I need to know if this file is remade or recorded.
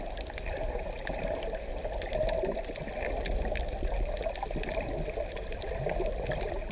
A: recorded